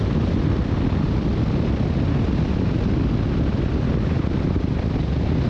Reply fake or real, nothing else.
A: real